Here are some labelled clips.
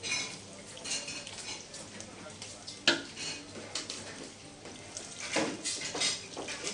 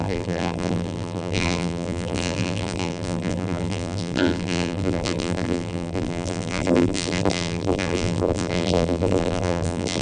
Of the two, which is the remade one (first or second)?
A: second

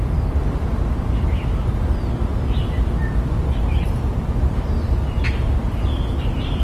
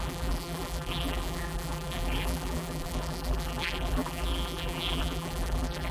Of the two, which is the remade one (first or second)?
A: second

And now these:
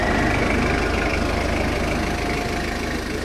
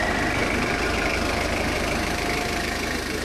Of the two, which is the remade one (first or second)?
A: second